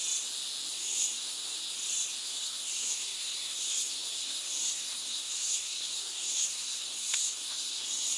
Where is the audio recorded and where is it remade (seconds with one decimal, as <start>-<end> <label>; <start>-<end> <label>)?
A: 0.0-0.7 recorded; 0.7-1.6 remade; 1.6-2.2 recorded; 2.2-8.2 remade